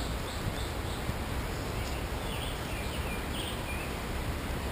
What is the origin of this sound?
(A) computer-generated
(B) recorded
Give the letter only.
B